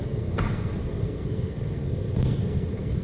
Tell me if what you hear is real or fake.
fake